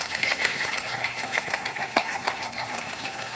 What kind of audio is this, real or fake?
fake